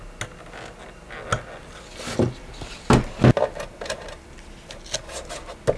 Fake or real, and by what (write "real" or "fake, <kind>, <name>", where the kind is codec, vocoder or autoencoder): real